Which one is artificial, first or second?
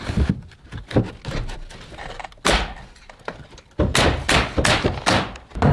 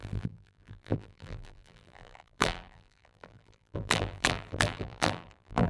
second